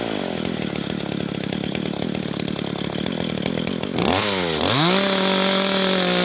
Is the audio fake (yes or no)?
no